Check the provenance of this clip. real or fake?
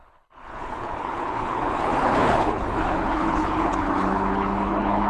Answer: fake